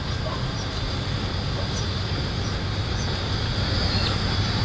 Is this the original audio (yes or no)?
yes